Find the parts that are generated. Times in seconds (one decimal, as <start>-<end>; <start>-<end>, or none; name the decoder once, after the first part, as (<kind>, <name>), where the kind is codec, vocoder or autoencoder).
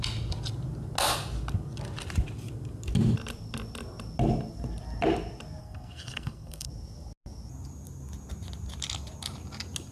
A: 5.6-6.7 (codec, SNAC)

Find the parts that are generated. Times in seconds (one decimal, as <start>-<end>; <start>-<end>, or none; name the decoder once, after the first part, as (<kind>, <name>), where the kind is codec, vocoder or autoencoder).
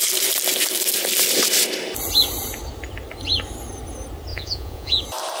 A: 4.3-5.0 (vocoder, Vocos)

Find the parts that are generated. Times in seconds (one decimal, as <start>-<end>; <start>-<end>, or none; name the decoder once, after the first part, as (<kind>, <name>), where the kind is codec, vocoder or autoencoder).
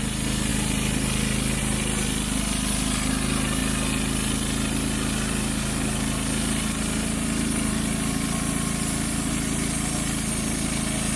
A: none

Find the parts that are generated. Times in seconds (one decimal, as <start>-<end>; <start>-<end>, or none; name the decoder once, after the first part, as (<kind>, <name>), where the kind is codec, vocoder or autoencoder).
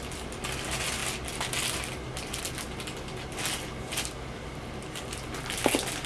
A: none